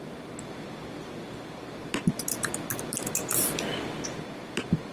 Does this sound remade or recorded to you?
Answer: recorded